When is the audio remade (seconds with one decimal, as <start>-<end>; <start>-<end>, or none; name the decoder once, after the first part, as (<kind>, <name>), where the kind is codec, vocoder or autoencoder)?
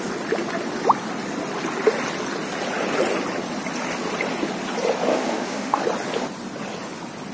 5.1-5.8 (autoencoder, DAC-VAE)